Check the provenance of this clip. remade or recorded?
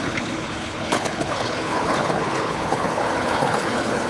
remade